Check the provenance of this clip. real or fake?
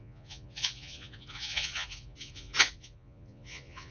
fake